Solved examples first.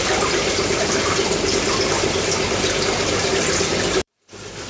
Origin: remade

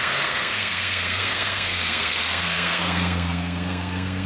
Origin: remade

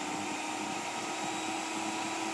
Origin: recorded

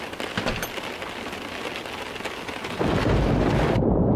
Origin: recorded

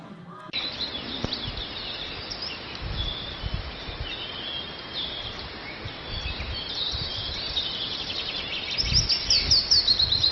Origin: recorded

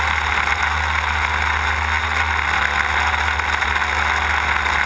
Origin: recorded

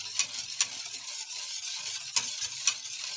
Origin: recorded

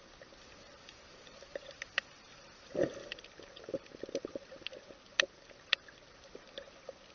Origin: recorded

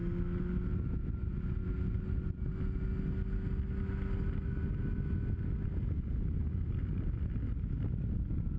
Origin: recorded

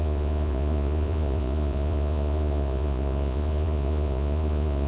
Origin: remade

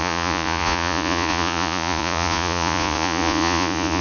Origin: remade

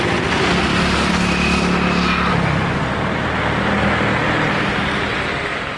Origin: recorded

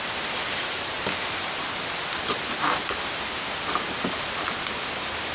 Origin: recorded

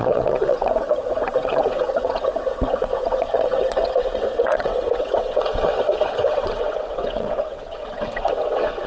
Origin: remade